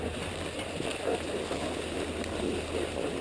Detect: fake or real real